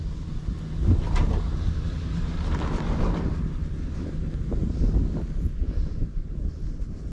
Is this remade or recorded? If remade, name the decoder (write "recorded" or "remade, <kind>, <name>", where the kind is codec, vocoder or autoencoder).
recorded